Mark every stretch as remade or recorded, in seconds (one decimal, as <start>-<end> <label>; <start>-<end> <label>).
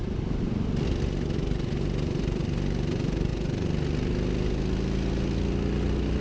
0.0-6.2 recorded